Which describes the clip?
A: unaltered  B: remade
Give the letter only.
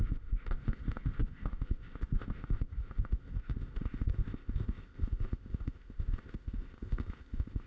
B